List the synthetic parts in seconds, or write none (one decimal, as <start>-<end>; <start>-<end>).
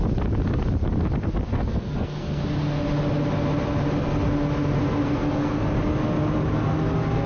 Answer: 1.5-2.4; 4.8-5.6